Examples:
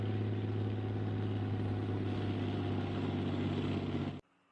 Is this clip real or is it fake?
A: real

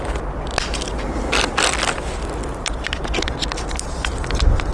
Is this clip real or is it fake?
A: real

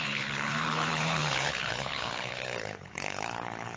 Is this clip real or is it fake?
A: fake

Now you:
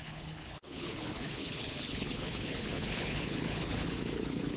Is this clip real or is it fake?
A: fake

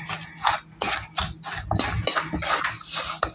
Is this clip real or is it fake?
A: real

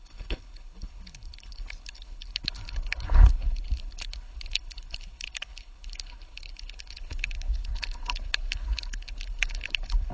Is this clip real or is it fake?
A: fake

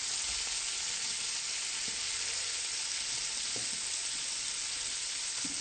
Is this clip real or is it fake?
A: real